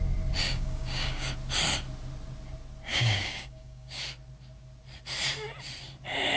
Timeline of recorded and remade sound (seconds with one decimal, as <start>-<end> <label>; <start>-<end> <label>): 0.0-0.4 recorded; 0.4-1.3 remade; 1.3-2.9 recorded; 2.9-4.0 remade; 4.0-6.4 recorded